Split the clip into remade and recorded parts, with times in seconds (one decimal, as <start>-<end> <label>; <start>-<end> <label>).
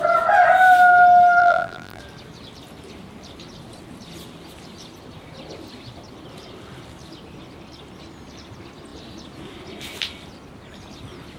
0.0-1.4 recorded; 1.4-2.0 remade; 2.0-11.4 recorded